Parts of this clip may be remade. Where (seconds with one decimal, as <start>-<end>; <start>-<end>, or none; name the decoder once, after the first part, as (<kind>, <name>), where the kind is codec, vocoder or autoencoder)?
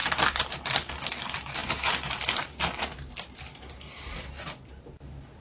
none